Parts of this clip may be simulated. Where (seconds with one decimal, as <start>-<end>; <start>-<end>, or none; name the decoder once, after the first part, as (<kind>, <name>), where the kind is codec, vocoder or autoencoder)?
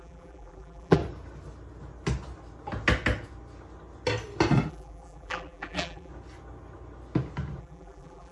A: 0.0-1.0 (vocoder, BigVGAN v2); 4.7-6.1; 7.6-8.3